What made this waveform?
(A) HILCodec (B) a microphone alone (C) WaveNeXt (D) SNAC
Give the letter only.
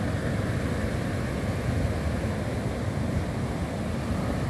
B